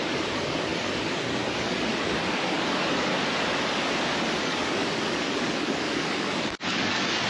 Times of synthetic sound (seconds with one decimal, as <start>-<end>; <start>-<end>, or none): 0.0-3.1; 4.4-7.3